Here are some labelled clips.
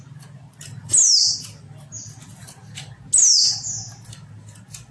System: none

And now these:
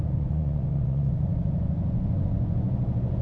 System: vocoder, Vocos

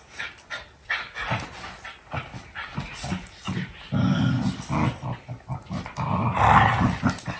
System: none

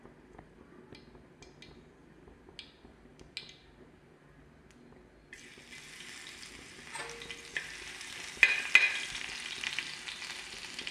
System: none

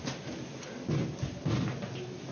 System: none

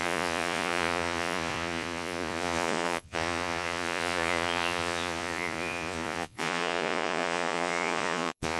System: vocoder, Vocos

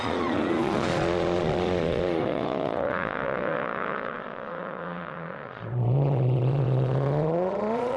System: vocoder, Vocos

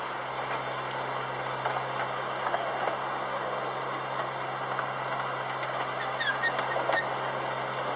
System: none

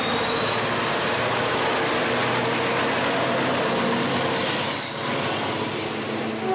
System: none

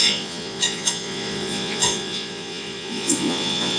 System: vocoder, Vocos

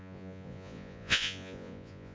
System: vocoder, Vocos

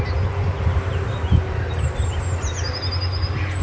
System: none